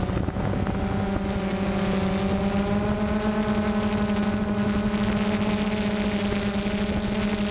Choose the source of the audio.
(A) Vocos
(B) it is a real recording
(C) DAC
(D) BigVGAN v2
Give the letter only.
B